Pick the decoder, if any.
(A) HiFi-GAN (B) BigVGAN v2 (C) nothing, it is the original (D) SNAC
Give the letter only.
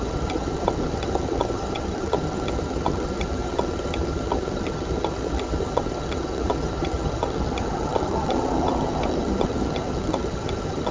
A